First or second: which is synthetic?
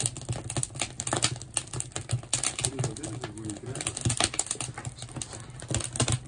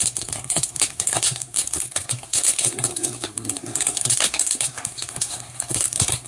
second